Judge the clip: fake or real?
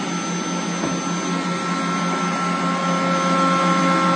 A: real